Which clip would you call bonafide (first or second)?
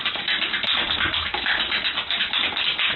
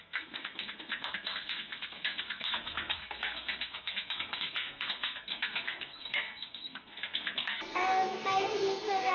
first